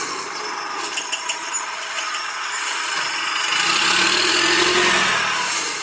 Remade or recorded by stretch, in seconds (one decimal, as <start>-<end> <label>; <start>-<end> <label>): 0.0-2.9 remade; 2.9-5.8 recorded